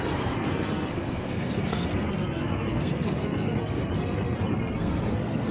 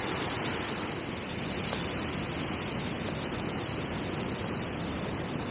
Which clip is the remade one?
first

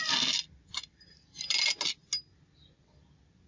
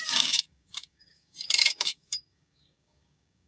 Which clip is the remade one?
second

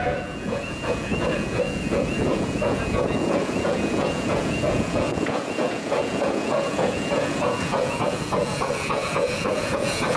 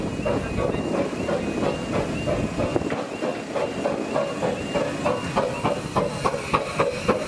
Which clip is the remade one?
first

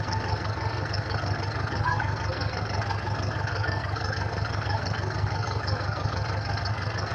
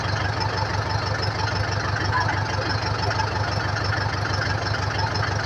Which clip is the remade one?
first